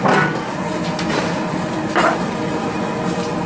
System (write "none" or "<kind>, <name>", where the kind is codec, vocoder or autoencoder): none